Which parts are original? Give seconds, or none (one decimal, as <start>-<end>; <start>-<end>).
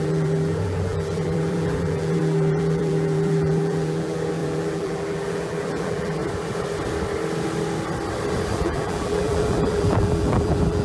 6.2-8.6